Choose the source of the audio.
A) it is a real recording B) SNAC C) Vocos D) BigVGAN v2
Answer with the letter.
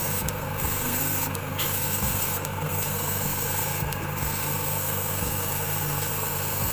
B